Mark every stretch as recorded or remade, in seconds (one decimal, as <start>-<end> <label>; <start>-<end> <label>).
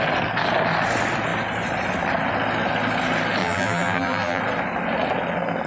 0.0-3.4 recorded; 3.4-4.4 remade; 4.4-5.7 recorded